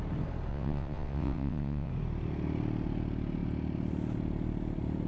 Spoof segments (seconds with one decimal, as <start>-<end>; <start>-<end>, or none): 0.5-1.9